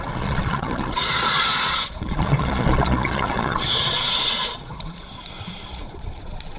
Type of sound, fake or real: fake